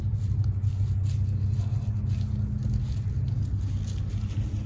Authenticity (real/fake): real